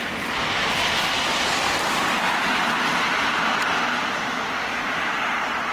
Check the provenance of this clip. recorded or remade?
recorded